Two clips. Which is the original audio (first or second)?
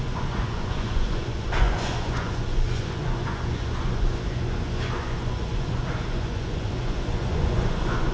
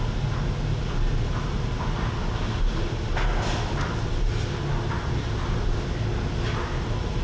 second